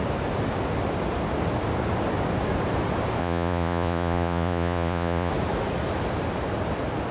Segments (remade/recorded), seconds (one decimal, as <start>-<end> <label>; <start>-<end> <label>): 0.0-3.2 recorded; 3.2-5.3 remade; 5.3-7.1 recorded